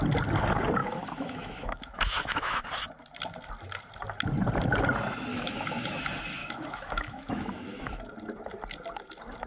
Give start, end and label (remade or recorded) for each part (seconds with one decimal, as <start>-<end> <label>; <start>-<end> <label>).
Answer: 0.0-0.8 recorded; 0.8-2.6 remade; 2.6-5.3 recorded; 5.3-6.0 remade; 6.0-6.4 recorded; 6.4-8.1 remade; 8.1-9.5 recorded